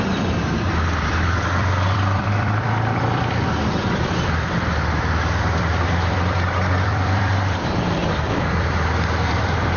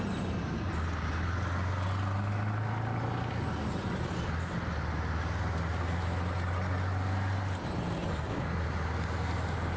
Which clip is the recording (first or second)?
second